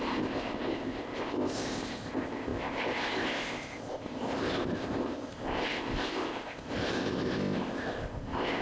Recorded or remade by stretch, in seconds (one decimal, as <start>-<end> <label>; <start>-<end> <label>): 0.0-8.6 remade